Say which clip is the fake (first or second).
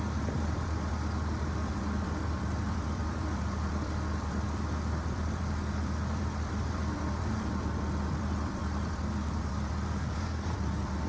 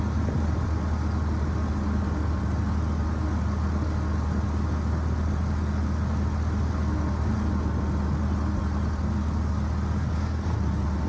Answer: first